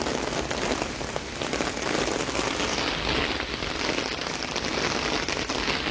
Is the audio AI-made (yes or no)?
no